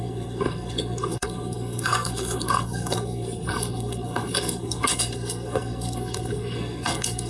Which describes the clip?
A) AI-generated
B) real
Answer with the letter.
A